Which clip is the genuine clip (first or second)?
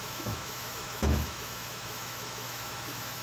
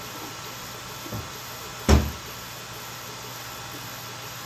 second